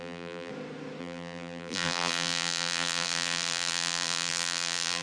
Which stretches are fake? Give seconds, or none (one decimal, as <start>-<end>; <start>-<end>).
0.0-0.5; 1.0-5.0